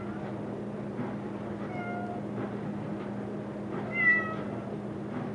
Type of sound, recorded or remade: recorded